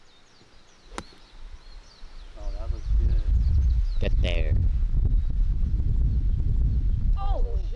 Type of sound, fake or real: real